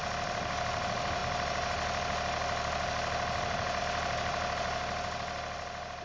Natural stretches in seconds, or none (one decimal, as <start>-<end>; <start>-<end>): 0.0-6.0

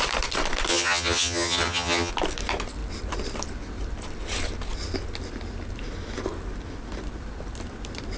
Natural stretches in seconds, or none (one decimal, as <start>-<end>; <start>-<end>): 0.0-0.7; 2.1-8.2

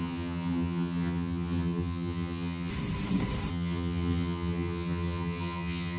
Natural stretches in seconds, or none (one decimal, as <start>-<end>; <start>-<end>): 2.7-3.5